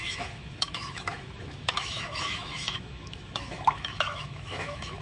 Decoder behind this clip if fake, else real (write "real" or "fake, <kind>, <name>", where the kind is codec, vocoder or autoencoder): fake, autoencoder, DAC-VAE